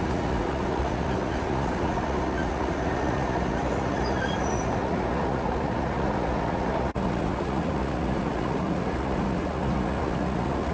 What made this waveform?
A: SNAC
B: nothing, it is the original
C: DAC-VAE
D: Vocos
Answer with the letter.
D